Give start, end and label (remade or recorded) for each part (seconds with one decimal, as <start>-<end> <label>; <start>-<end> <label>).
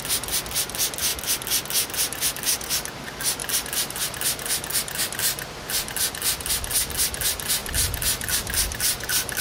0.0-1.1 remade; 1.1-1.9 recorded; 1.9-9.4 remade